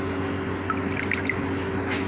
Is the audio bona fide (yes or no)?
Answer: yes